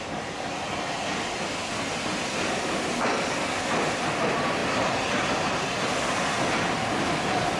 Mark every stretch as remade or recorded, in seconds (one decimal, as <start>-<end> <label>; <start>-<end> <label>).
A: 0.0-7.6 recorded

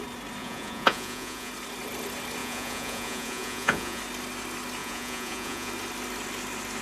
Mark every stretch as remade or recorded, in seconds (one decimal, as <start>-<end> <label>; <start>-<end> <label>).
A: 0.0-0.4 recorded; 0.4-1.5 remade; 1.5-2.4 recorded; 2.4-4.0 remade; 4.0-4.8 recorded; 4.8-5.7 remade; 5.7-6.8 recorded

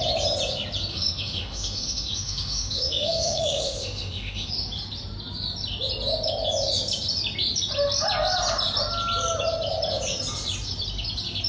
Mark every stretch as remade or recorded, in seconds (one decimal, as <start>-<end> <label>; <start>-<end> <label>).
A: 0.0-0.9 recorded; 0.9-4.5 remade; 4.5-11.5 recorded

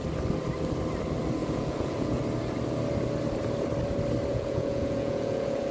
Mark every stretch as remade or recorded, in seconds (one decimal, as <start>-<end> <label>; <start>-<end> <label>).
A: 0.0-1.4 recorded; 1.4-2.2 remade; 2.2-4.3 recorded; 4.3-5.7 remade